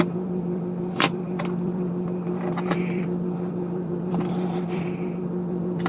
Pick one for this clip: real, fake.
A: fake